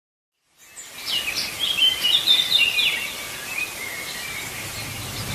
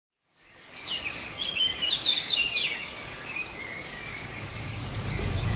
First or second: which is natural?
first